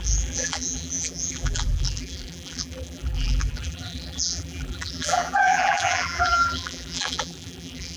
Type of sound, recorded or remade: remade